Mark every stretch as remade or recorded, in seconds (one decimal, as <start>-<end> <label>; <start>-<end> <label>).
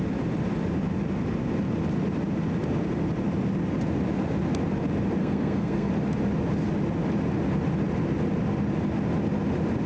0.0-5.2 recorded; 5.2-5.9 remade; 5.9-9.9 recorded